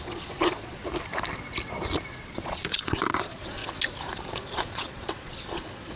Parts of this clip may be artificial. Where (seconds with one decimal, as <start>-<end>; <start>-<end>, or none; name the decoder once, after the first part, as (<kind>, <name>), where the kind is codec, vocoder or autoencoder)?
0.0-0.8 (vocoder, Vocos); 2.1-3.6; 4.3-6.0

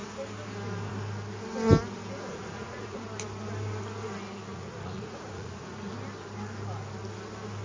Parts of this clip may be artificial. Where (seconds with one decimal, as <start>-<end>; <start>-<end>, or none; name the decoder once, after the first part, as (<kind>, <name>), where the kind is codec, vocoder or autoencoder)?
2.3-3.0 (vocoder, Vocos); 4.5-5.9

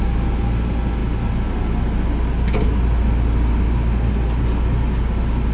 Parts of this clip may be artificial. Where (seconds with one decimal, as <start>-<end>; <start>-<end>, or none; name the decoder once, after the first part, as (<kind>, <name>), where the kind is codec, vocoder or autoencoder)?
none

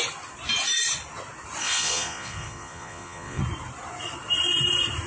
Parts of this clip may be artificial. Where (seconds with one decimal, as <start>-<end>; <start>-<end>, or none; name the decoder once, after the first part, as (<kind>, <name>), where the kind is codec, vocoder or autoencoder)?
1.6-3.4 (vocoder, Vocos)

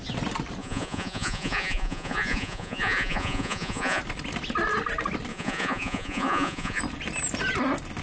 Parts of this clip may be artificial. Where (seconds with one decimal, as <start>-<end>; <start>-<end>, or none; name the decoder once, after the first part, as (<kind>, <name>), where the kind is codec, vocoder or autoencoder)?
0.6-4.0 (vocoder, Vocos); 5.3-6.8

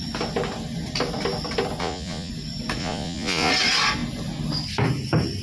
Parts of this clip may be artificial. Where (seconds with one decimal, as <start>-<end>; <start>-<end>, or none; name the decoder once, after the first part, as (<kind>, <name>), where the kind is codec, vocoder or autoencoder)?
1.8-2.3 (vocoder, Vocos); 2.8-3.5

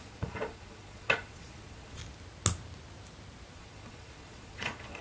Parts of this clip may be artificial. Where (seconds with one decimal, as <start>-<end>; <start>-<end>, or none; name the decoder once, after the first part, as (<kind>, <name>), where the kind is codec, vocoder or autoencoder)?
0.0-2.0 (vocoder, Vocos); 3.5-5.0

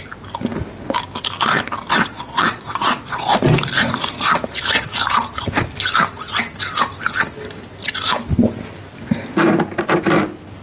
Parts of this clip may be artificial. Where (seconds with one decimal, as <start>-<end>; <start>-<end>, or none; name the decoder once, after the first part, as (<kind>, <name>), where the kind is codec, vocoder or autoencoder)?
1.9-3.4 (vocoder, Vocos)